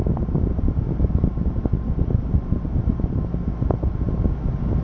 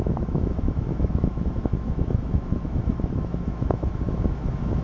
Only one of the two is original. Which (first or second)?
first